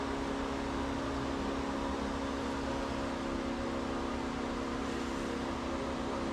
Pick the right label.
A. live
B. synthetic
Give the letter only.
A